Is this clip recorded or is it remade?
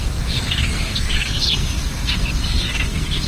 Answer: remade